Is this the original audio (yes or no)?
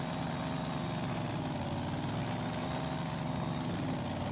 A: yes